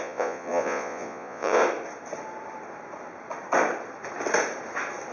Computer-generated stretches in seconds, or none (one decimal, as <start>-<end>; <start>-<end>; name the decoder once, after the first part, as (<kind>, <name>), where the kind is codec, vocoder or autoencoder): 0.0-1.6 (vocoder, Vocos)